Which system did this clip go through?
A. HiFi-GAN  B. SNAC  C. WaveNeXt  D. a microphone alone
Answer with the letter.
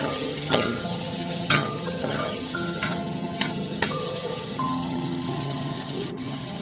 A